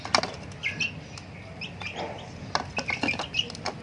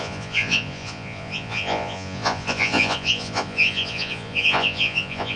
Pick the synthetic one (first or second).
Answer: second